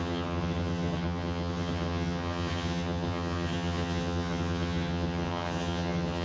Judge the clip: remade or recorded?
remade